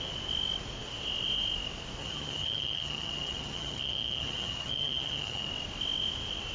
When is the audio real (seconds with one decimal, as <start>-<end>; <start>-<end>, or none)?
0.0-2.0; 5.5-6.5